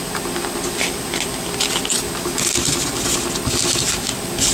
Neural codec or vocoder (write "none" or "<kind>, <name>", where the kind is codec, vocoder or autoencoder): none